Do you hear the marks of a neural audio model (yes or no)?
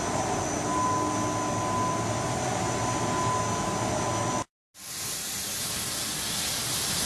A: no